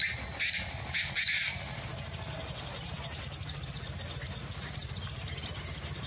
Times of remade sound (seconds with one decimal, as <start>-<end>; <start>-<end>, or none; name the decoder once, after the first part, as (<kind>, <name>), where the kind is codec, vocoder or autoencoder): none